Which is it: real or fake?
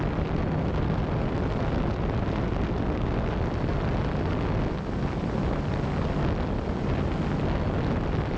real